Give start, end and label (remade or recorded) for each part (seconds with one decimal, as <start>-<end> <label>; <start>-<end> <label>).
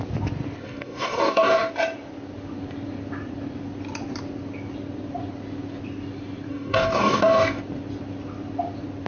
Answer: 0.0-0.6 recorded; 0.6-1.7 remade; 1.7-6.5 recorded; 6.5-7.6 remade; 7.6-9.1 recorded